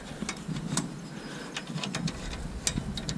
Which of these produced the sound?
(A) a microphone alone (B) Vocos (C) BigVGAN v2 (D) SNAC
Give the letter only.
A